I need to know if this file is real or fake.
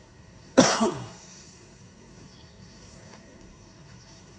fake